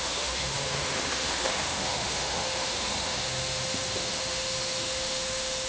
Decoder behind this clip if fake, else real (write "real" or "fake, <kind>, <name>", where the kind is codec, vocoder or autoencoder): fake, autoencoder, DAC-VAE